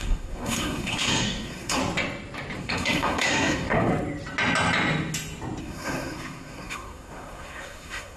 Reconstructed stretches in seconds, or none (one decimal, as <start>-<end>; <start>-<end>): 0.0-1.8; 2.6-3.9; 5.6-8.2